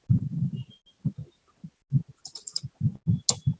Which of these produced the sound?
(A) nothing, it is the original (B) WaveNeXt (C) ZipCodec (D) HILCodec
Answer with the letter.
A